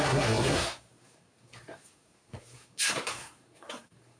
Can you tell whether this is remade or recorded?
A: remade